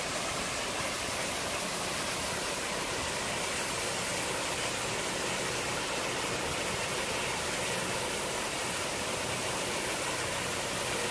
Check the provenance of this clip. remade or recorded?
recorded